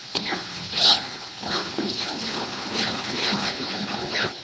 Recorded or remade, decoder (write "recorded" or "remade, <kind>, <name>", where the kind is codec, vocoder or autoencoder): remade, codec, HILCodec